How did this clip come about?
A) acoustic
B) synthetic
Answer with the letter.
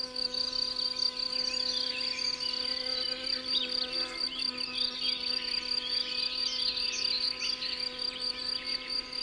A